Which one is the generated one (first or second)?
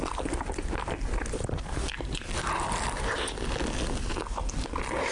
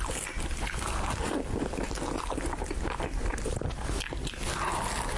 first